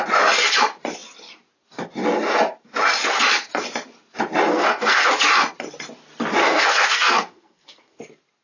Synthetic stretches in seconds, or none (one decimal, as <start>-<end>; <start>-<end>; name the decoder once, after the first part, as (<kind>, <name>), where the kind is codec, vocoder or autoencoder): 4.5-5.1 (codec, SNAC); 6.4-8.0